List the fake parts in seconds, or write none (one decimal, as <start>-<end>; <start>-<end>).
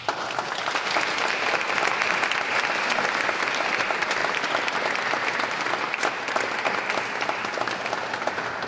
none